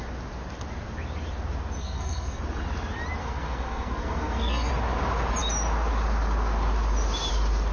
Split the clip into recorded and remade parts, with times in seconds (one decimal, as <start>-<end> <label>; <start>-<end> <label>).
0.0-1.8 recorded; 1.8-2.4 remade; 2.4-3.2 recorded; 3.2-4.7 remade; 4.7-7.7 recorded